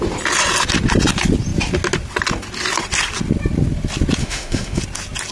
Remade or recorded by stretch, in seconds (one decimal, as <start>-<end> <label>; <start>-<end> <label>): 0.0-4.2 recorded; 4.2-4.8 remade; 4.8-5.3 recorded